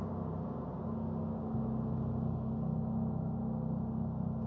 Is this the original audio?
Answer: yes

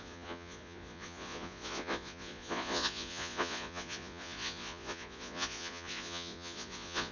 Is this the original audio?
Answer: no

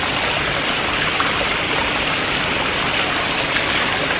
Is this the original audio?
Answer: yes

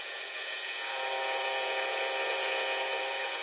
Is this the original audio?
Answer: no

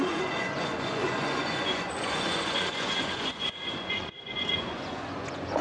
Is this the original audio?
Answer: no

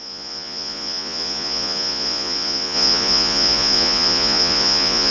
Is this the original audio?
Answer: no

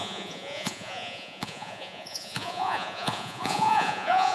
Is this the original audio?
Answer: no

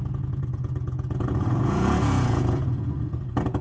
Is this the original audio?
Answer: no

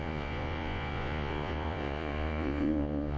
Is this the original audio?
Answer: no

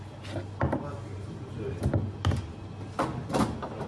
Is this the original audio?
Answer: yes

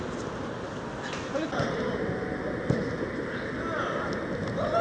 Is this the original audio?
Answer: yes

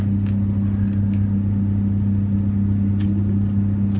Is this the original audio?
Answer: yes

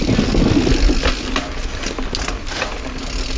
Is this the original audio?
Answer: yes